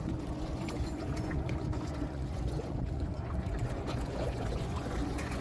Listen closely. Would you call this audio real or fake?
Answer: fake